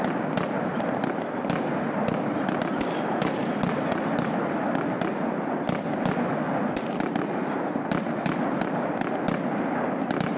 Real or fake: real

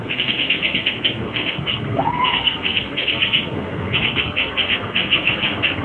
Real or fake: fake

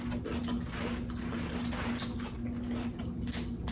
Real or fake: real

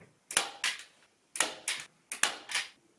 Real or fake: real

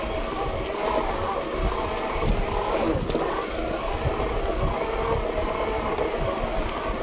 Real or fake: real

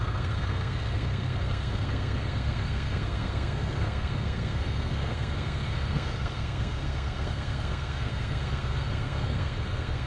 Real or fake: fake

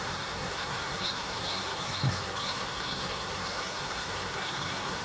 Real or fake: fake